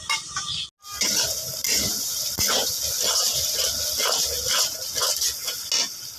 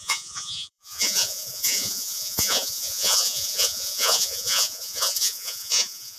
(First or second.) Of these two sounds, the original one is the first